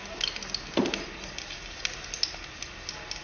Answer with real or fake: real